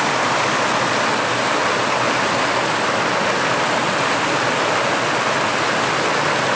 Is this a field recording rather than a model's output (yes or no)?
yes